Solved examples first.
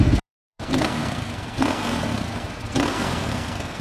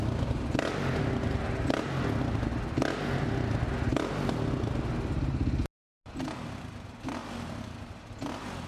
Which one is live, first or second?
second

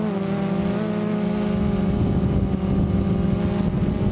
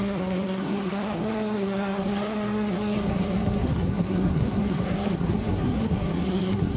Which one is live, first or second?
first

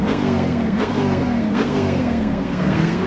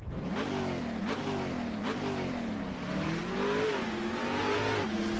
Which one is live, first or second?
second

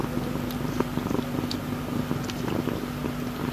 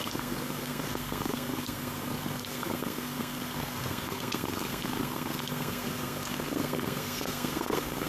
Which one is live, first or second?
first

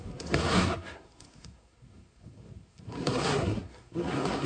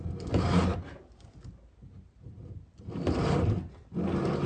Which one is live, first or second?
second